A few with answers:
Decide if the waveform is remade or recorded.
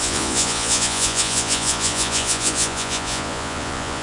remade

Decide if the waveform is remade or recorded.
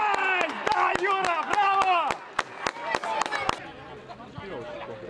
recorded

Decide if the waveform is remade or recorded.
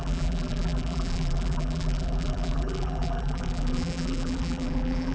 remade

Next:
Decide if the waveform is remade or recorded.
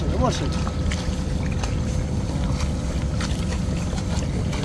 recorded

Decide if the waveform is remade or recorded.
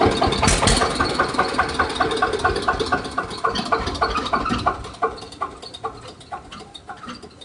recorded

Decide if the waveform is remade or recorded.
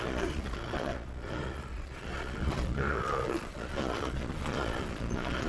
remade